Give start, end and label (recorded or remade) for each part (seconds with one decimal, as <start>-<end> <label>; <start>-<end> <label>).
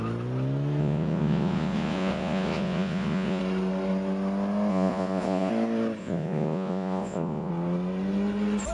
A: 0.0-0.8 recorded; 0.8-3.4 remade; 3.4-4.7 recorded; 4.7-5.5 remade; 5.5-6.0 recorded; 6.0-7.5 remade; 7.5-8.7 recorded